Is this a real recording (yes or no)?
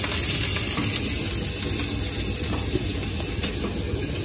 yes